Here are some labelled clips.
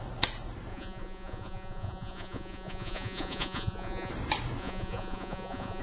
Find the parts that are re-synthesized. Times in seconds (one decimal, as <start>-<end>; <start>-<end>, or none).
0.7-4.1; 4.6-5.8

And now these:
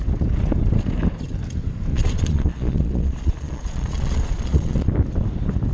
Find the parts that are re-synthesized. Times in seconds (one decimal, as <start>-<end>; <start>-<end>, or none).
1.9-4.9

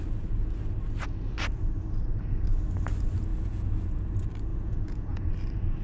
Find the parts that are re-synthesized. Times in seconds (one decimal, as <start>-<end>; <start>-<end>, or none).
3.3-4.1; 4.5-5.3